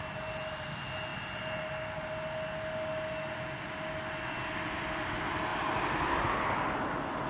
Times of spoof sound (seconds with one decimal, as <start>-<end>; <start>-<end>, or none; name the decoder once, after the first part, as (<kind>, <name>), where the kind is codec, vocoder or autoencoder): none